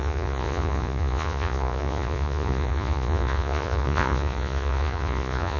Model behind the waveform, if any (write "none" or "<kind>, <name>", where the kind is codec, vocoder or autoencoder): vocoder, Vocos